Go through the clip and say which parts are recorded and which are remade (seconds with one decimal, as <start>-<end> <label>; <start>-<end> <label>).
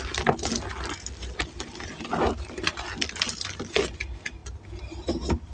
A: 0.0-5.5 recorded